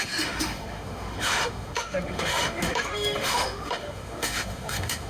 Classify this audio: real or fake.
fake